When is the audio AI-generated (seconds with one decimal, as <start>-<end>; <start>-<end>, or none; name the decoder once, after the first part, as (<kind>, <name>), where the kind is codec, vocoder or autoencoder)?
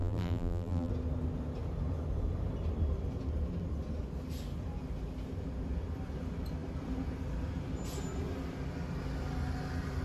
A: 0.0-0.9 (vocoder, BigVGAN v2)